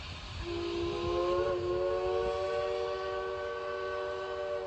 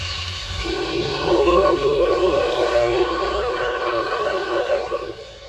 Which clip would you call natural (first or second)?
first